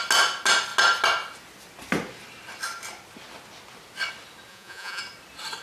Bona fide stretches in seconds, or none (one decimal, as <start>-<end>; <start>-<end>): 0.0-4.5; 5.0-5.6